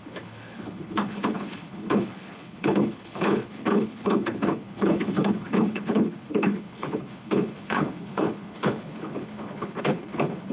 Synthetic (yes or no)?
yes